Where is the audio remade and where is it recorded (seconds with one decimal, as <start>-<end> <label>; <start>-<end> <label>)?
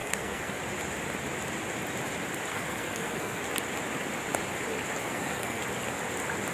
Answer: 0.0-0.6 remade; 0.6-2.5 recorded; 2.5-3.4 remade; 3.4-5.0 recorded; 5.0-5.6 remade; 5.6-6.5 recorded